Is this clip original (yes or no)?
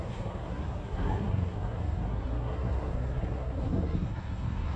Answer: no